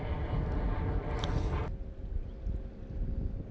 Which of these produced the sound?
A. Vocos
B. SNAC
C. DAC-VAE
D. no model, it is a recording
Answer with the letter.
D